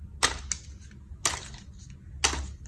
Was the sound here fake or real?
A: real